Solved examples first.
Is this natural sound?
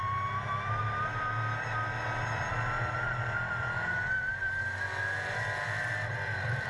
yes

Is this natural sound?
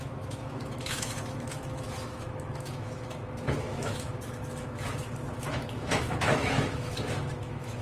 no